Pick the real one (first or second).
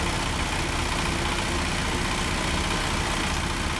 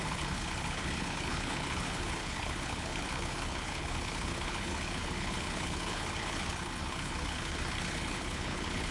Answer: first